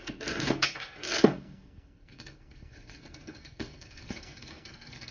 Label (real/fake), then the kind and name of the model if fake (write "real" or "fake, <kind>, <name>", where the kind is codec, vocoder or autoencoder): fake, codec, SNAC